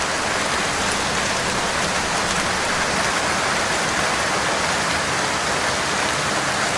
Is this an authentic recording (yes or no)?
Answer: yes